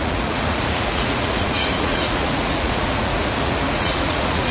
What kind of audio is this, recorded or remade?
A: remade